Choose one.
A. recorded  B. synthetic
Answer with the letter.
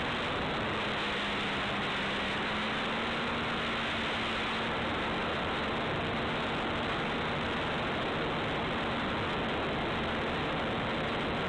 A